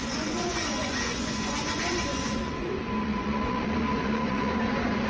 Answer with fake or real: fake